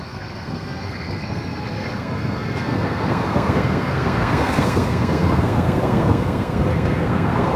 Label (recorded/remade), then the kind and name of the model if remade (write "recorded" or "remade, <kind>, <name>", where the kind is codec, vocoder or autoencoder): remade, codec, SNAC